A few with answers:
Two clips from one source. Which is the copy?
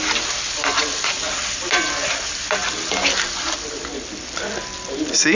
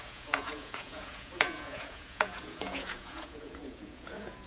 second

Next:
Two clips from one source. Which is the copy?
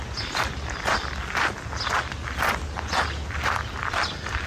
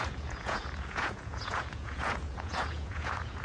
second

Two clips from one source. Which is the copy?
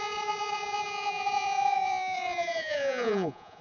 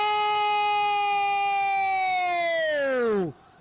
first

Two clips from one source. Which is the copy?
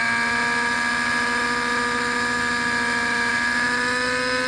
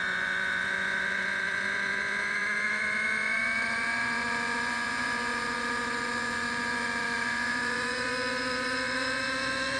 second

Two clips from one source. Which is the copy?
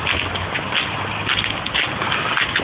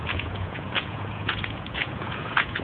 second